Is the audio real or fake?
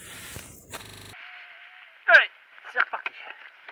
fake